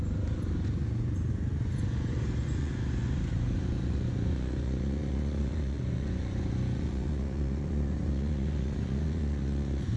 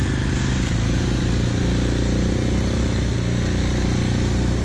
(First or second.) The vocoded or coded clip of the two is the first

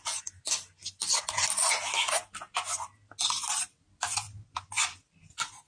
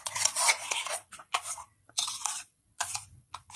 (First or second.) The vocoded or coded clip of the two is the second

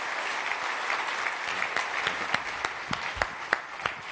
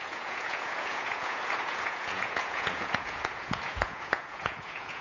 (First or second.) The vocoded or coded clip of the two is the second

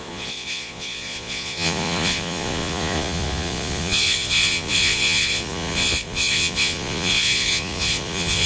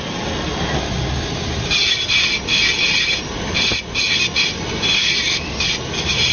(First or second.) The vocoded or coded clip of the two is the first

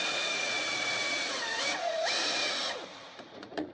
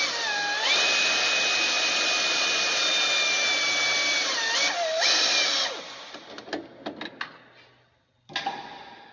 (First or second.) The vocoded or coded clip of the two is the first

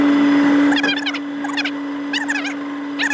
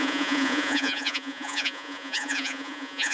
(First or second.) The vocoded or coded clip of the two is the second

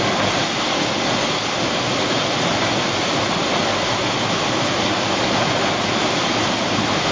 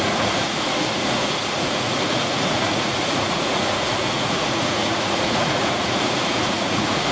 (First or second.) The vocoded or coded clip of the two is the second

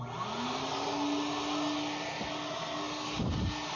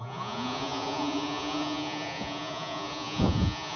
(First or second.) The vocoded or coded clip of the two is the second